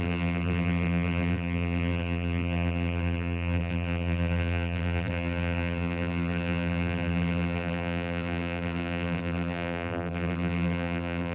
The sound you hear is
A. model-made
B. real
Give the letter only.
A